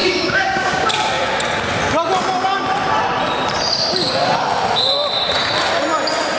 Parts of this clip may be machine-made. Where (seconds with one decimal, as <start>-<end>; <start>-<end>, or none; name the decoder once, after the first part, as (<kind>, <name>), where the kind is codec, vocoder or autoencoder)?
0.0-0.9 (codec, DAC)